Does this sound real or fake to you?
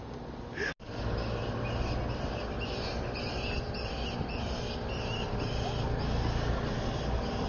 real